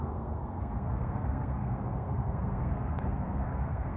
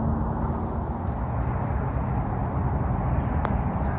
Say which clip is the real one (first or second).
second